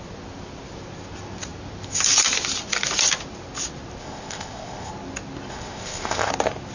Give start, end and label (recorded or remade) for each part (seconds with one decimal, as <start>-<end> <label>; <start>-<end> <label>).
0.0-4.0 recorded; 4.0-4.9 remade; 4.9-5.5 recorded; 5.5-6.3 remade; 6.3-6.7 recorded

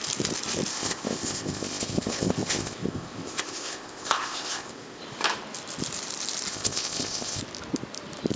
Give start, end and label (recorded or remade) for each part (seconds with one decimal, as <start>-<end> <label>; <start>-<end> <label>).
0.0-0.7 recorded; 0.7-5.0 remade; 5.0-6.5 recorded; 6.5-7.4 remade; 7.4-8.4 recorded

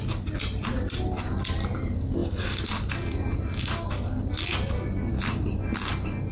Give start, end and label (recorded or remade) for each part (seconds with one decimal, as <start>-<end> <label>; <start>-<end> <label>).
0.0-6.3 recorded

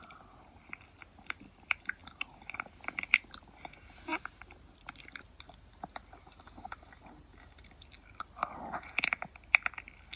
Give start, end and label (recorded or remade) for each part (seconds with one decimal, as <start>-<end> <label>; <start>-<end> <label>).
0.0-10.2 recorded

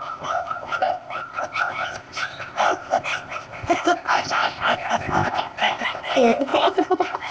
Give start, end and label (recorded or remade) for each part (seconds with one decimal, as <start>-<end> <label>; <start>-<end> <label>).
0.0-7.3 remade

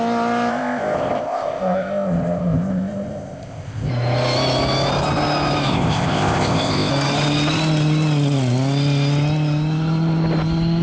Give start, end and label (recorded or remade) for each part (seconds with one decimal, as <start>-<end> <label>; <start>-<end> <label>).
0.0-0.5 recorded; 0.5-3.9 remade; 3.9-5.7 recorded; 5.7-6.9 remade; 6.9-10.8 recorded

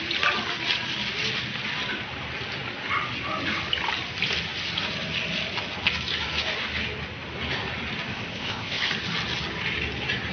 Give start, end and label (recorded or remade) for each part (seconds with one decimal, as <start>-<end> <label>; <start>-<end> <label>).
0.0-8.1 recorded; 8.1-8.9 remade; 8.9-10.3 recorded